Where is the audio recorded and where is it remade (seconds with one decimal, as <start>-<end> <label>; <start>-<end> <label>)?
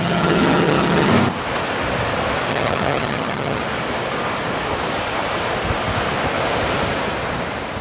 0.0-1.1 remade; 1.1-2.5 recorded; 2.5-3.6 remade; 3.6-7.8 recorded